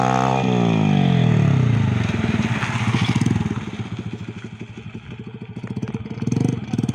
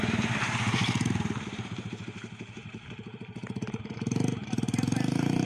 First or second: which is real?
first